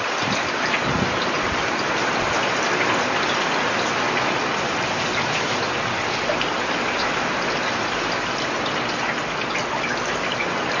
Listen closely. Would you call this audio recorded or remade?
recorded